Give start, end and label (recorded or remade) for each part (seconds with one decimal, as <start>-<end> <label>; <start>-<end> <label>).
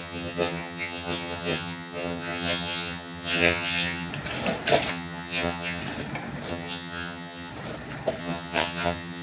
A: 0.0-4.1 remade; 4.1-4.9 recorded; 4.9-5.8 remade; 5.8-6.5 recorded; 6.5-7.5 remade; 7.5-8.2 recorded; 8.2-9.2 remade